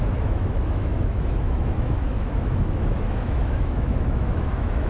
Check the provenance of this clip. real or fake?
fake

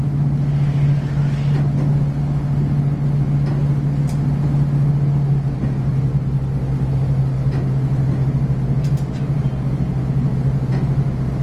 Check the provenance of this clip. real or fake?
real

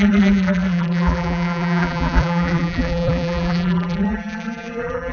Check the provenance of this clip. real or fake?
fake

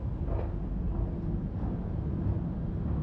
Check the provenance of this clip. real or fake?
real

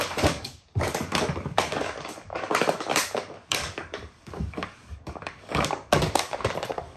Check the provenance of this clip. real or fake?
fake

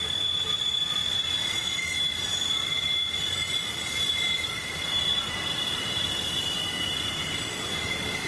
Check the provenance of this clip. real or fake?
real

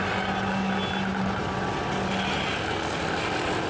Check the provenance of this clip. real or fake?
real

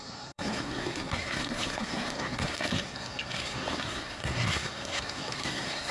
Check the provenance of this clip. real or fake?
fake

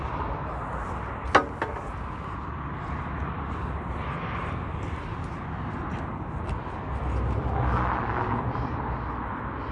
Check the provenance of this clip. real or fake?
real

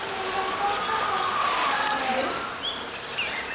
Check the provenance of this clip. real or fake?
real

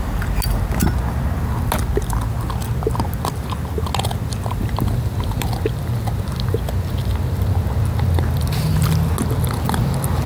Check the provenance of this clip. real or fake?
real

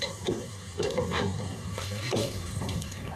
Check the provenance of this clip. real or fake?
fake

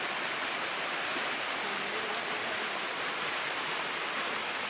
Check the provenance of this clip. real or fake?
real